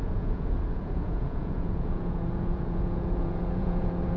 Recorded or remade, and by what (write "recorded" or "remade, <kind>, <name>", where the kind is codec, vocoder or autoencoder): remade, vocoder, Vocos